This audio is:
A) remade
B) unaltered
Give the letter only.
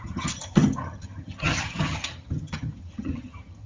A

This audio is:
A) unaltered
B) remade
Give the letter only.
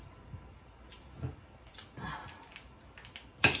A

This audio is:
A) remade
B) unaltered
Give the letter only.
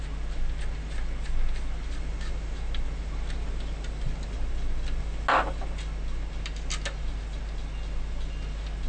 B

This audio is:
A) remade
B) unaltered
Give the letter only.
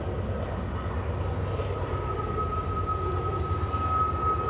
B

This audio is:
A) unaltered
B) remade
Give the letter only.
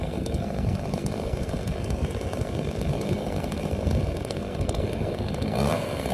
B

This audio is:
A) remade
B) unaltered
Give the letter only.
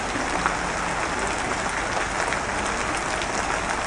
B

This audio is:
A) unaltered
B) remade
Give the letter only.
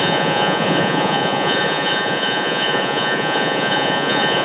B